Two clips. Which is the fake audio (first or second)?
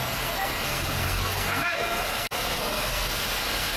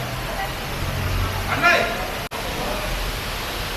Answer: first